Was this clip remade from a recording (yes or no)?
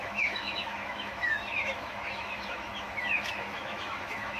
yes